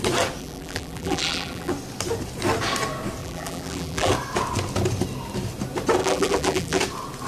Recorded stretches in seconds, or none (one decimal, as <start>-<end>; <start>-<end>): 0.0-0.4; 1.7-3.2; 4.1-6.0; 6.8-7.3